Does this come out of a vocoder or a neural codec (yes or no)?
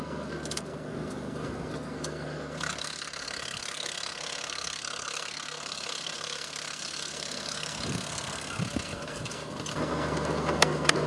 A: yes